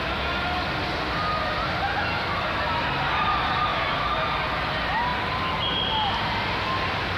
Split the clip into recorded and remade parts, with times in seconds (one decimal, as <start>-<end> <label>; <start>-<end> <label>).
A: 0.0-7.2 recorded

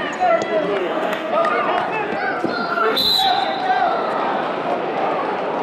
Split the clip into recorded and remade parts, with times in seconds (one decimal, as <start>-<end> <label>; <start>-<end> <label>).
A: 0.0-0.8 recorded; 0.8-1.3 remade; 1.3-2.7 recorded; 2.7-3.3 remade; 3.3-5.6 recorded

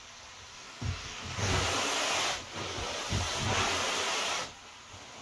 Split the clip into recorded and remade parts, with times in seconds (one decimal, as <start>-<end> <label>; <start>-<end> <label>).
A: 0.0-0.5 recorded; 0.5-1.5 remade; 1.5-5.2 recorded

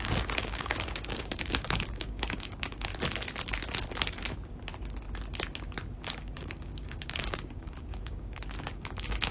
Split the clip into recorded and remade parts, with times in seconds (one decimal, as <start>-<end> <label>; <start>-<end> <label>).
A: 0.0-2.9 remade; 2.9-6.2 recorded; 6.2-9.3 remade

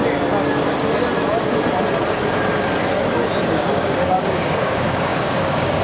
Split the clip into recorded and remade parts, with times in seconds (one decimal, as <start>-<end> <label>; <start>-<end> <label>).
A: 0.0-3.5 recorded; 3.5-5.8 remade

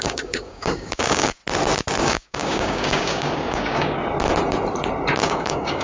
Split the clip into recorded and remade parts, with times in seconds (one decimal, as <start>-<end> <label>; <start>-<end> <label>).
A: 0.0-1.4 remade; 1.4-2.0 recorded; 2.0-4.0 remade; 4.0-5.2 recorded; 5.2-5.8 remade